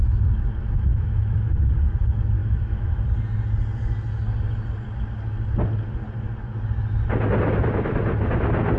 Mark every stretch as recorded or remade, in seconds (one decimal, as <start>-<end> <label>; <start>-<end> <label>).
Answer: 0.0-0.9 recorded; 0.9-1.6 remade; 1.6-2.4 recorded; 2.4-3.0 remade; 3.0-8.8 recorded